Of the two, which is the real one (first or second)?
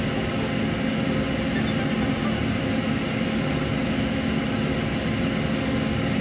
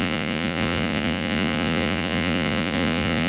first